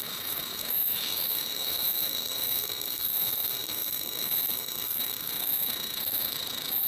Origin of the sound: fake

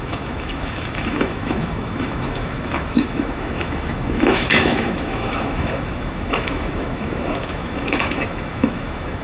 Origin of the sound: fake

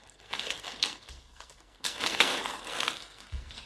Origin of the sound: fake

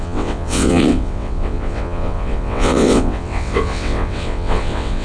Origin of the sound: fake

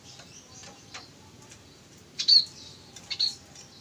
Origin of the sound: fake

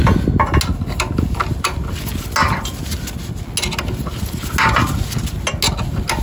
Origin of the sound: real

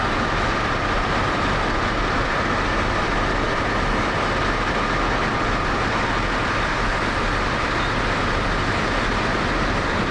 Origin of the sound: real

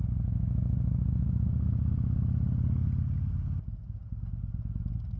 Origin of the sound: real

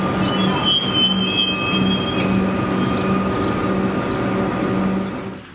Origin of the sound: real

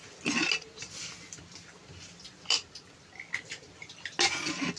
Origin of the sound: real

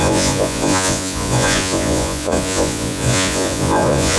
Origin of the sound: fake